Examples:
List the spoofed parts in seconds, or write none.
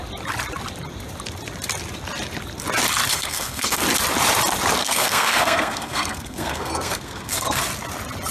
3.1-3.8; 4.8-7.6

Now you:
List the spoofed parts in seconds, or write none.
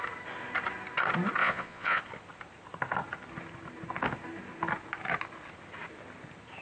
1.4-2.0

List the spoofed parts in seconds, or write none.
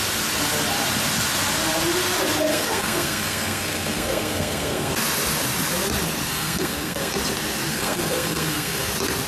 2.5-4.9; 6.3-7.1; 7.7-8.9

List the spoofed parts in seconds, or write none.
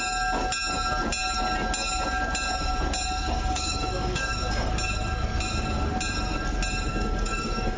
3.2-4.7; 6.9-7.8